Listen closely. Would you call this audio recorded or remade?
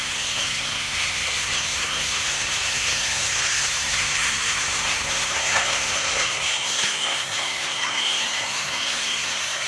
remade